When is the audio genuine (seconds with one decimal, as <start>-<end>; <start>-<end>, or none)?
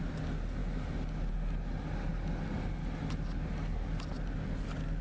0.0-5.0